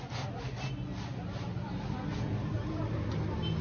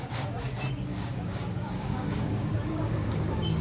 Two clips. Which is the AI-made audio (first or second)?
second